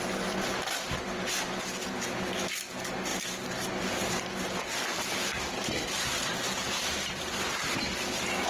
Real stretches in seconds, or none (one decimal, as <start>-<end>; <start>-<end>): 0.0-4.9; 7.8-8.5